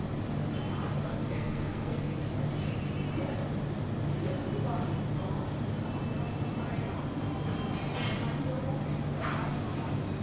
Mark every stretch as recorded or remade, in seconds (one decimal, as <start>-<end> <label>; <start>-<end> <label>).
0.0-1.1 recorded; 1.1-2.2 remade; 2.2-10.2 recorded